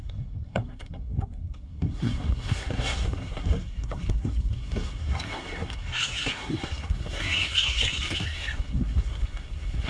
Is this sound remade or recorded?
remade